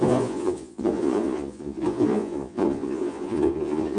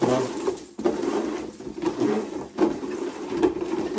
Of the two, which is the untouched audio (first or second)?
second